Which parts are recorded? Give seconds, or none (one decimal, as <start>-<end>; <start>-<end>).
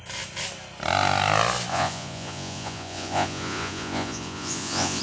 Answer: 0.0-1.7